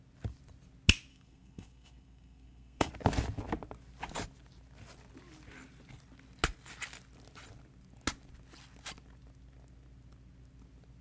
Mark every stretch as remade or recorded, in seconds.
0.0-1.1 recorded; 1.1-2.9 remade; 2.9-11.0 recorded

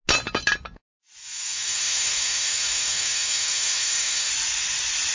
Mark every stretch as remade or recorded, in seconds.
0.0-1.2 recorded; 1.2-4.3 remade; 4.3-5.1 recorded

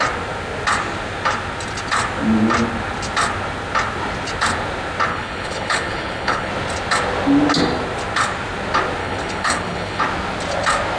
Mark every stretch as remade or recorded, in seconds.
0.0-5.1 recorded; 5.1-6.5 remade; 6.5-9.0 recorded; 9.0-10.0 remade; 10.0-11.0 recorded

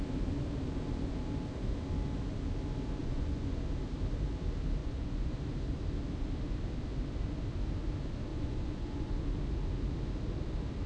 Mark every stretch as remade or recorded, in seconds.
0.0-3.0 recorded; 3.0-3.6 remade; 3.6-4.8 recorded; 4.8-5.3 remade; 5.3-8.3 recorded; 8.3-9.2 remade; 9.2-10.9 recorded

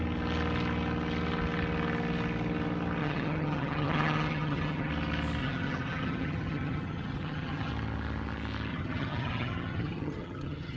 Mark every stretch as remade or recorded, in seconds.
0.0-3.0 recorded; 3.0-4.9 remade; 4.9-5.4 recorded; 5.4-7.7 remade; 7.7-8.7 recorded; 8.7-10.8 remade

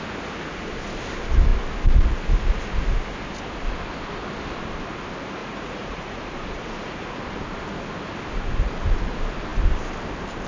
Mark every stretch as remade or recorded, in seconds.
0.0-5.4 recorded; 5.4-7.2 remade; 7.2-10.5 recorded